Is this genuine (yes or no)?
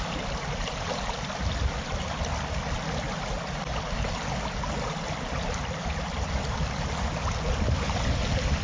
yes